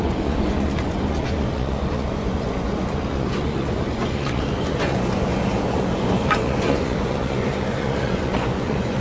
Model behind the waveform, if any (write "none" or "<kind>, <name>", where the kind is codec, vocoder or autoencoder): vocoder, Vocos